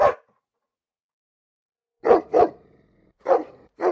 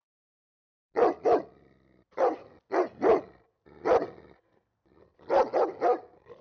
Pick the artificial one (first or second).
first